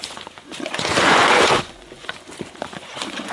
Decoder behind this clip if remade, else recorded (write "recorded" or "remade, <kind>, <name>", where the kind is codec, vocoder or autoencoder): remade, vocoder, Vocos